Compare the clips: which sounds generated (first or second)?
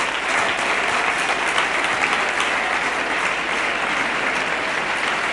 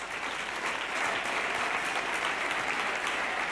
second